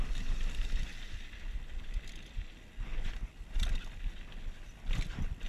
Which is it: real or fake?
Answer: real